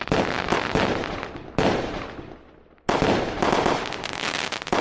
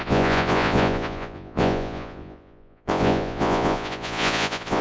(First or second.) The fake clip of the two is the second